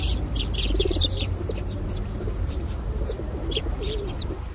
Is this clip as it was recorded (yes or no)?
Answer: no